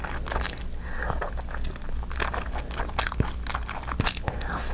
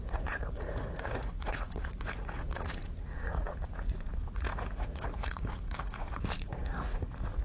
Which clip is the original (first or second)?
first